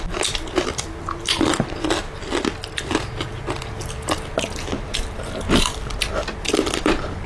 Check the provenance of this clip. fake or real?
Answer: fake